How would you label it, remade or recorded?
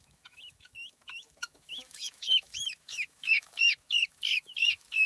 remade